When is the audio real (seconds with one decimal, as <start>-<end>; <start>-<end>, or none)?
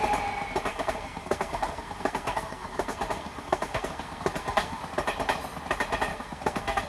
0.0-0.7; 4.8-6.1